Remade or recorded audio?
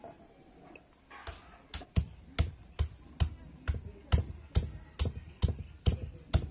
recorded